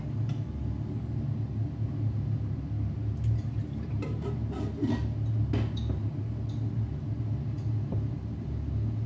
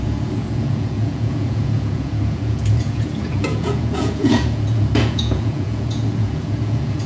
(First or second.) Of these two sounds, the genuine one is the first